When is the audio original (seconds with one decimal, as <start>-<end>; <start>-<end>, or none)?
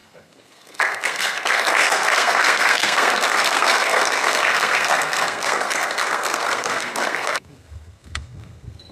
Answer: none